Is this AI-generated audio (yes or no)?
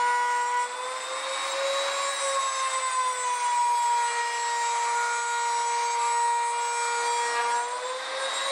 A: no